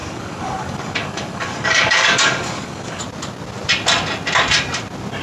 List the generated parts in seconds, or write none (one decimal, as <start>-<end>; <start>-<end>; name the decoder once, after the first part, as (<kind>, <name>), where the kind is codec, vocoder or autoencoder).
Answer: 0.0-3.0 (codec, DAC)